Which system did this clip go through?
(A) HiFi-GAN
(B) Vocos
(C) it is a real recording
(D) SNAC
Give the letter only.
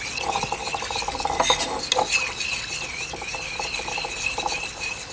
C